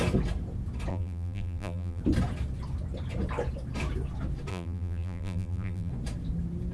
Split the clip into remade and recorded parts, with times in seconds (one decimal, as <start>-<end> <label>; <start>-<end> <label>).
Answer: 0.0-0.9 recorded; 0.9-2.0 remade; 2.0-4.5 recorded; 4.5-5.9 remade; 5.9-6.7 recorded